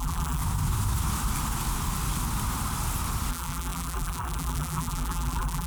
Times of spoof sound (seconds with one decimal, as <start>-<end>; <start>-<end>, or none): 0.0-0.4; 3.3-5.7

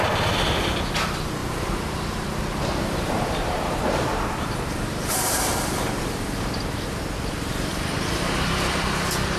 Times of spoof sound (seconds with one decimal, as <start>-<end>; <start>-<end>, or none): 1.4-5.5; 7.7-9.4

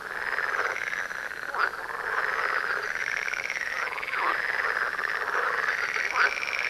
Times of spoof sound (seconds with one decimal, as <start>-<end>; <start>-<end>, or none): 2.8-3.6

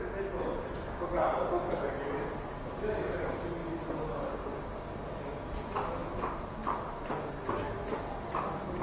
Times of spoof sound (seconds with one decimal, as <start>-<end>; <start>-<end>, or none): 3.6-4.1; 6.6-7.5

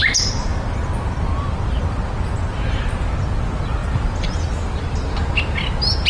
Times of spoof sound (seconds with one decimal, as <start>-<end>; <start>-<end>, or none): none